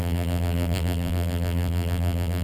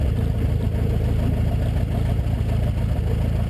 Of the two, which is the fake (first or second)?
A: first